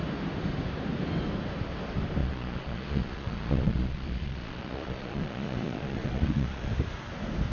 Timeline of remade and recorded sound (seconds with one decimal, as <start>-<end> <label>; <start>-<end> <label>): 0.0-2.2 recorded; 2.2-6.7 remade; 6.7-7.5 recorded